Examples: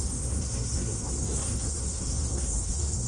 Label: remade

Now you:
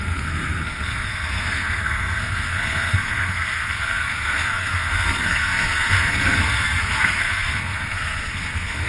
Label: remade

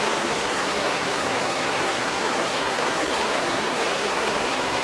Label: remade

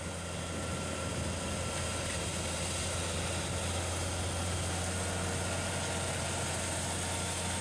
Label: recorded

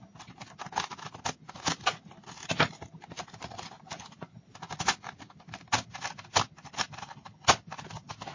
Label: recorded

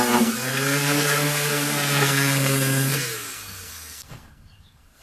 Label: remade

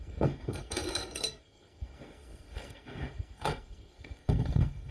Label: remade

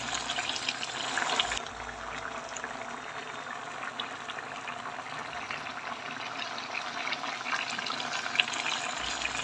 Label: recorded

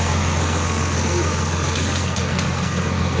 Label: remade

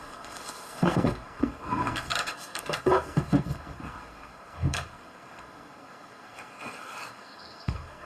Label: remade